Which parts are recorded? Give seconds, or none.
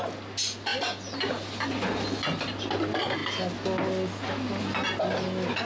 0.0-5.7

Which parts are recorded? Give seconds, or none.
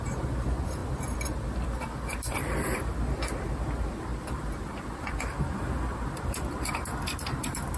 none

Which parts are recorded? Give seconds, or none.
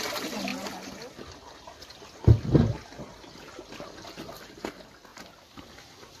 0.0-6.2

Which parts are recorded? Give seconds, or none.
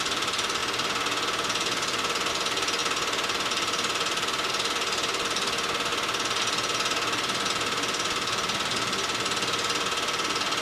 0.0-10.6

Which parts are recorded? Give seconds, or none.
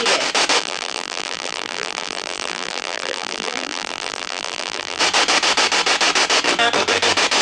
0.0-0.6; 5.0-7.4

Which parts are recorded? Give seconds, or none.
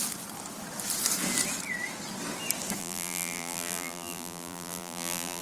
0.0-2.8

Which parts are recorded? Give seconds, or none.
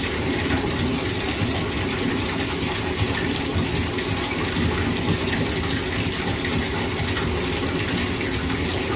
0.9-2.8; 3.5-9.0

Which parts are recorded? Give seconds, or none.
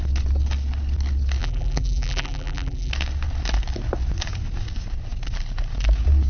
0.0-1.4; 2.9-6.3